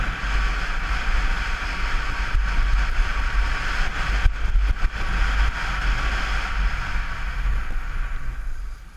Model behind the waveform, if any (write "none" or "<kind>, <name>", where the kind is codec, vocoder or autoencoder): none